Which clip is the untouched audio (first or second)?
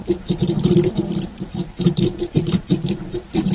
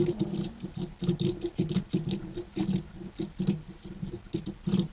second